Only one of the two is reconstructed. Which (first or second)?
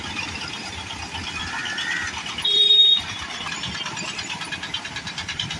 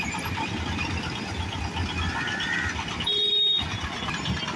first